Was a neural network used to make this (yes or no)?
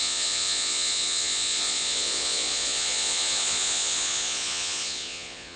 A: yes